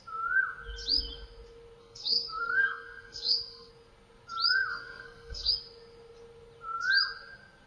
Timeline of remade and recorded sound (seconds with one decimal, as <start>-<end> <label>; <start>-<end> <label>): 0.0-1.8 recorded; 1.8-3.7 remade; 3.7-4.7 recorded; 4.7-5.5 remade; 5.5-7.7 recorded